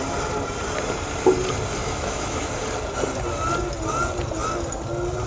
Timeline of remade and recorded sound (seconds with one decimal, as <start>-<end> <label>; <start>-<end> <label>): 0.0-1.8 recorded; 1.8-2.5 remade; 2.5-5.3 recorded